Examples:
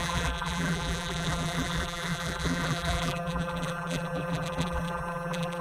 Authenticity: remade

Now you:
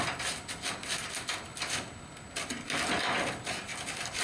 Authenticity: recorded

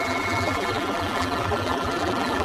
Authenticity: remade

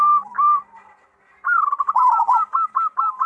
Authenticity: recorded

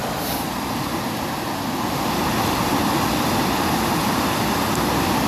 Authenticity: recorded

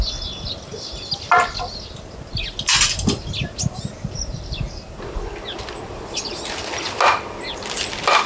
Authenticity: recorded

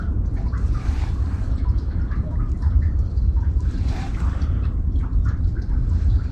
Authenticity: remade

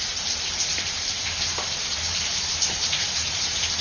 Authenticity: remade